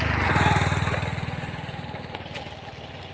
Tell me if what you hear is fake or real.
real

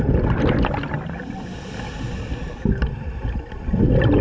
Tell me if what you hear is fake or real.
real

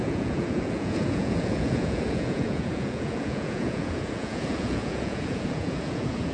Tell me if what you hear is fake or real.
fake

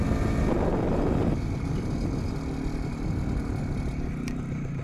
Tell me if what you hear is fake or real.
real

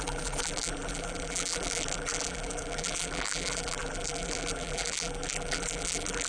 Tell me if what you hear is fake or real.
fake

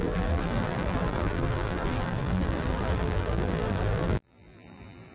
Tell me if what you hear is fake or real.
fake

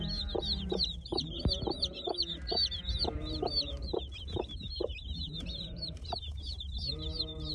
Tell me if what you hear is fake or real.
fake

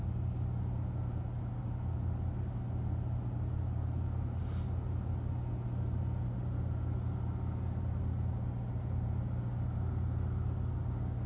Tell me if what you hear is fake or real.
real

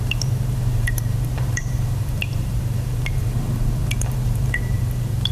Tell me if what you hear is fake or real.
fake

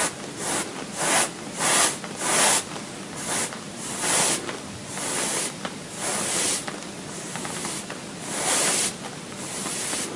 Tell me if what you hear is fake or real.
real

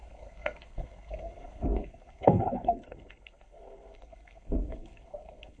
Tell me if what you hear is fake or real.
fake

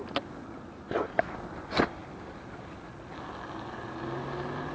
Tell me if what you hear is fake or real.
real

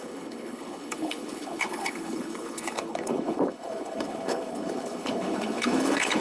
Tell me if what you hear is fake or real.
fake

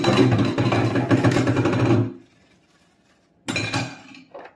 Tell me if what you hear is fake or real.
real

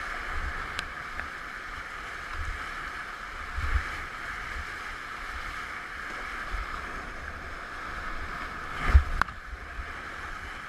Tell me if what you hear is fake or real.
real